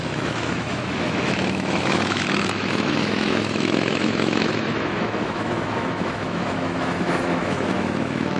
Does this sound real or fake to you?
fake